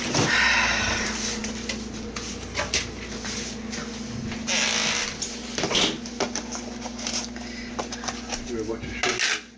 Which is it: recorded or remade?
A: recorded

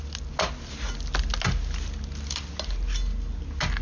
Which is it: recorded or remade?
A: recorded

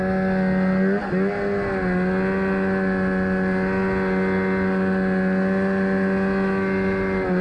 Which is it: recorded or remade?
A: recorded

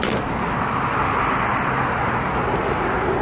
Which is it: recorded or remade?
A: recorded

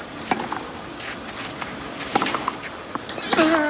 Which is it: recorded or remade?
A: recorded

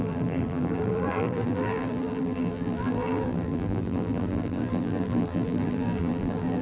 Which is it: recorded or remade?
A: remade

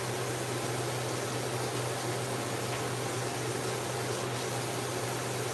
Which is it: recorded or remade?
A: recorded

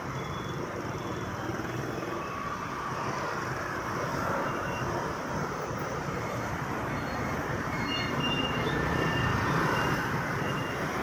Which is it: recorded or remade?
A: remade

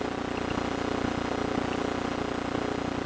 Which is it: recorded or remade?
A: recorded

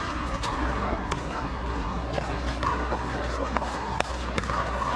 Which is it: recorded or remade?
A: remade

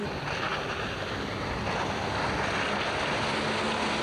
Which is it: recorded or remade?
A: recorded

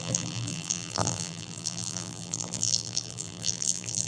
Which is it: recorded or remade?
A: remade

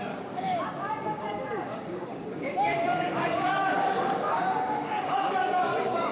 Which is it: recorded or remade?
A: remade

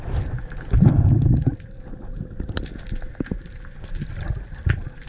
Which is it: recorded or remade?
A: recorded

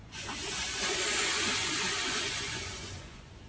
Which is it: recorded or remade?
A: remade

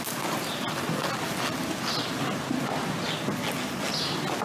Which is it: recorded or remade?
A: recorded